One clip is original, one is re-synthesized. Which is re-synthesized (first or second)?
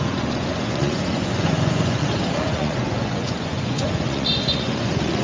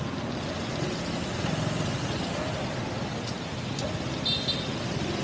first